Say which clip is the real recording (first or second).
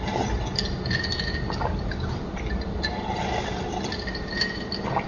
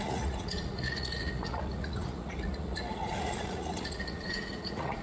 first